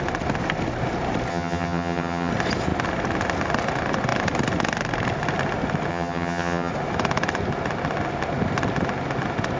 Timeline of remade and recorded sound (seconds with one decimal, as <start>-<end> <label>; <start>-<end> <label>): 0.0-1.3 recorded; 1.3-2.3 remade; 2.3-5.9 recorded; 5.9-6.7 remade; 6.7-9.6 recorded